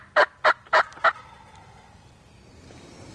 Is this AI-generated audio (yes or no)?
no